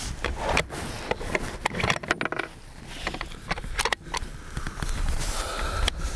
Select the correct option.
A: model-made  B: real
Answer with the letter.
B